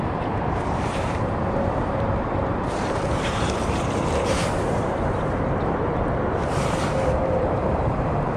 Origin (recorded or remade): remade